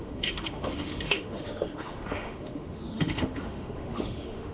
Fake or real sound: fake